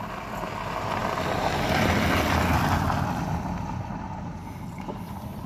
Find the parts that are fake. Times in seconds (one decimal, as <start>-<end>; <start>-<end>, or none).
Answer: none